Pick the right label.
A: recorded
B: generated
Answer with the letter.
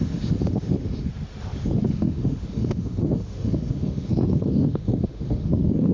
B